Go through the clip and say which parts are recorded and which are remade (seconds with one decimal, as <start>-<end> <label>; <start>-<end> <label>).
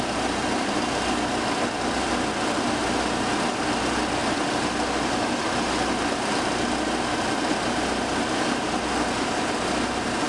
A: 0.0-10.3 recorded